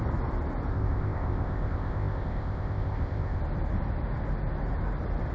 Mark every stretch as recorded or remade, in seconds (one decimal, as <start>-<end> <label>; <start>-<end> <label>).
0.0-0.7 recorded; 0.7-3.4 remade; 3.4-5.3 recorded